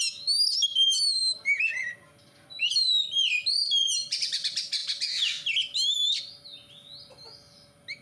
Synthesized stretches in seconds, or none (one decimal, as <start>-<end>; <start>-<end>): none